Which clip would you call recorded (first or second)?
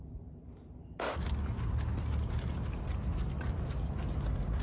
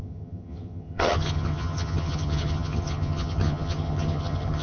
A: first